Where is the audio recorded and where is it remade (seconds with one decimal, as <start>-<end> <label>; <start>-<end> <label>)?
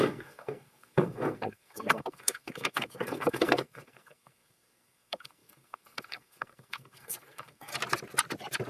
0.0-7.7 remade; 7.7-8.7 recorded